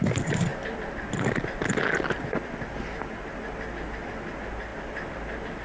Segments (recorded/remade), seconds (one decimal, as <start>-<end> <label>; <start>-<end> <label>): 0.0-5.6 recorded